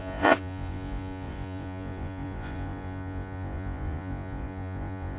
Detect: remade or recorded remade